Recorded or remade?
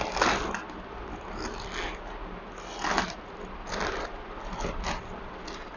recorded